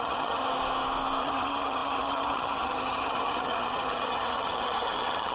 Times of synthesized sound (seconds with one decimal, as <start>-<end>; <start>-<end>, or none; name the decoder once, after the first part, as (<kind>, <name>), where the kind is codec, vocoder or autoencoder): 0.0-0.4 (vocoder, HiFi-GAN); 1.2-5.3